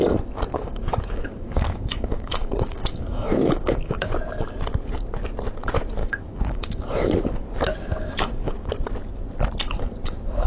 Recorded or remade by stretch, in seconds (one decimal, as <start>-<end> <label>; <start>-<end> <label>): 0.0-0.5 recorded; 0.5-4.1 remade; 4.1-6.0 recorded; 6.0-6.8 remade; 6.8-7.8 recorded; 7.8-8.7 remade; 8.7-10.5 recorded